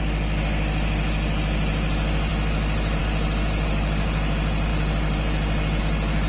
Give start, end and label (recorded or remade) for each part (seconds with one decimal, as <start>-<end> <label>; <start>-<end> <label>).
0.0-6.3 recorded